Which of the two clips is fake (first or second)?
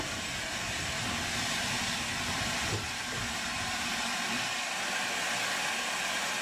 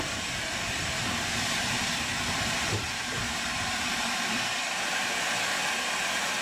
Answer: second